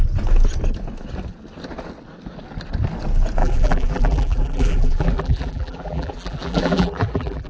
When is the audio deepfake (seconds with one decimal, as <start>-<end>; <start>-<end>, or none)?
3.4-7.5